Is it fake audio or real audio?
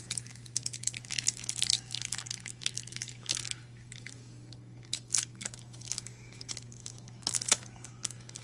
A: fake